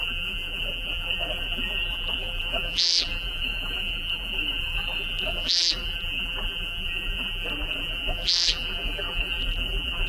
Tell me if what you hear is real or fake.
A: fake